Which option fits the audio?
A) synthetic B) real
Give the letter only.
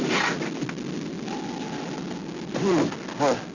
B